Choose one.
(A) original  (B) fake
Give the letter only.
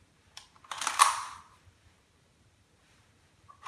B